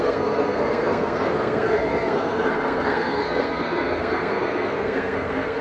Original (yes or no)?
no